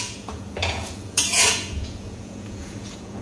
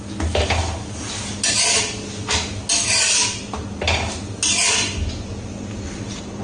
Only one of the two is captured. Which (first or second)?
second